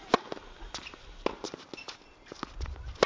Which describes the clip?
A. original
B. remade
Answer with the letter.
A